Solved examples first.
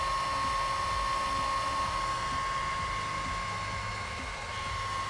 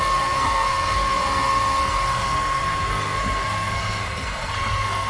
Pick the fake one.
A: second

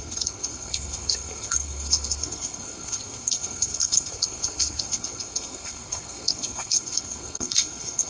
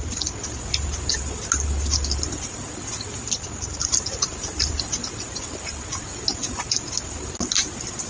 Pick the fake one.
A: first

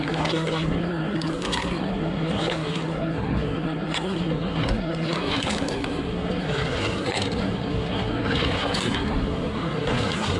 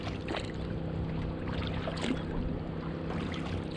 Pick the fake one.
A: first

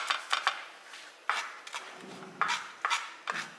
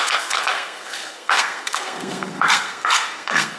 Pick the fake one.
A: second